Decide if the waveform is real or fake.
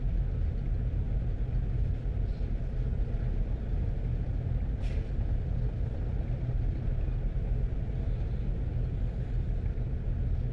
real